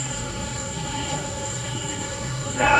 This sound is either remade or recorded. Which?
remade